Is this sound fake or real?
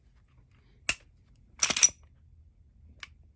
real